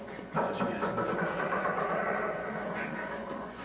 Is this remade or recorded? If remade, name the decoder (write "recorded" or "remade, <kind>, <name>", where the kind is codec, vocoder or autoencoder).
remade, vocoder, Vocos